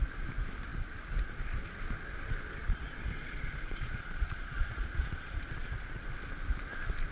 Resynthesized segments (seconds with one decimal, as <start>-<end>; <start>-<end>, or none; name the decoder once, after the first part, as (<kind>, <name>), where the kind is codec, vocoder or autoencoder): 2.6-6.0 (vocoder, Vocos)